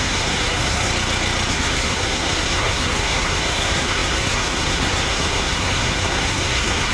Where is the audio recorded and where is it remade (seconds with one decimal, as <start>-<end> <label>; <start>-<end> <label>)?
0.0-0.9 remade; 0.9-1.5 recorded; 1.5-6.9 remade